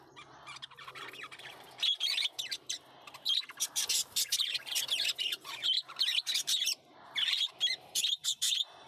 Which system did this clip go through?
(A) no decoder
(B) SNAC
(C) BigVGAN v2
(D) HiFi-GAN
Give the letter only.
C